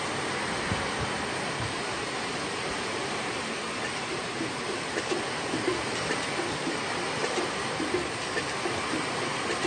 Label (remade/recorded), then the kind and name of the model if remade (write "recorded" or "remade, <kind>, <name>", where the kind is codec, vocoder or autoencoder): remade, vocoder, BigVGAN v2